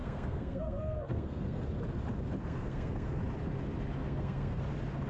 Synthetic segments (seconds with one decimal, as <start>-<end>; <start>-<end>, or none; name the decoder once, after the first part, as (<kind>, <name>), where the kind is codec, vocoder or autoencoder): 0.0-1.6 (codec, SNAC); 2.4-3.2; 4.0-4.6